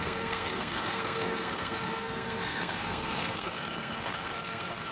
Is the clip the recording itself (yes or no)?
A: no